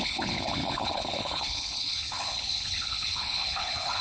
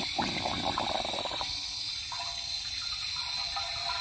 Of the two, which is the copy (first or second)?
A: first